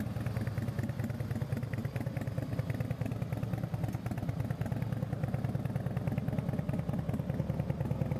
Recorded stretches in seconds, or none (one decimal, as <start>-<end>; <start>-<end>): 0.0-8.2